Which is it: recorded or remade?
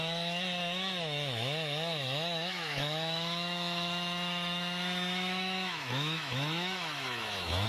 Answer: remade